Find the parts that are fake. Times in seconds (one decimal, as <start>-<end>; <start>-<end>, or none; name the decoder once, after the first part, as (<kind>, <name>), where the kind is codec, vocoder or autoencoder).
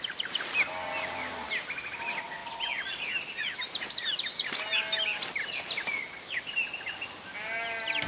none